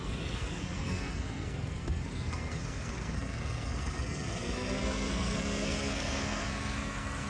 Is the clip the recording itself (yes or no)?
no